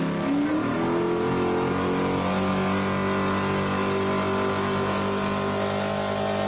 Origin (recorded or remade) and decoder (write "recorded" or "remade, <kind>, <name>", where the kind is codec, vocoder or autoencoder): recorded